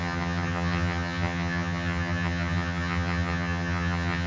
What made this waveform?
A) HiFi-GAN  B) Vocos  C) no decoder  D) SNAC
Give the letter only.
A